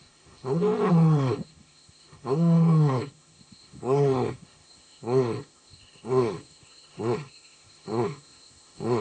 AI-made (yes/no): yes